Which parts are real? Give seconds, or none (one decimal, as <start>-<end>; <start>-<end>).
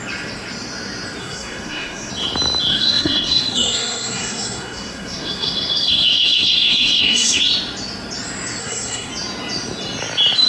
0.0-1.2; 2.1-2.7; 7.4-8.6; 9.1-10.5